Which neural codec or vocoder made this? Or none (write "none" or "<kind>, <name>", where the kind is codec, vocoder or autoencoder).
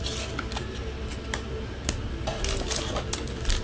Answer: none